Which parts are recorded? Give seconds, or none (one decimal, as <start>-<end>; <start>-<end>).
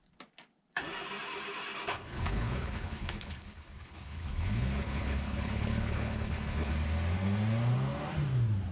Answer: 0.0-1.9; 6.7-8.7